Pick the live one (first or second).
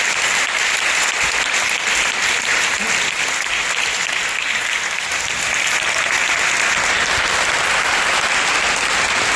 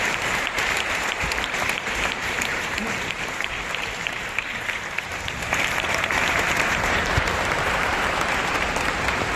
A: first